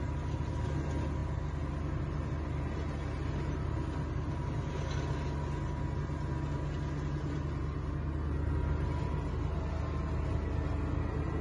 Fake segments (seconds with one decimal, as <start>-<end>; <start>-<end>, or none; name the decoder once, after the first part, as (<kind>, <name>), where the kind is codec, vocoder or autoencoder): none